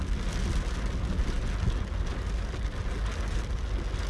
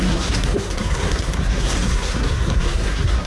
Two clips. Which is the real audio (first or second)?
first